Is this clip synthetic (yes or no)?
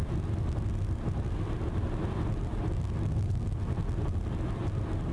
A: no